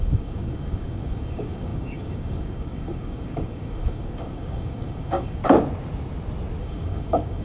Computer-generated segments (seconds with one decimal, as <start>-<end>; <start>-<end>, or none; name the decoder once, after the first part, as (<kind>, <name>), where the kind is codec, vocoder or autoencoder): 0.0-5.4 (codec, DAC); 6.6-7.4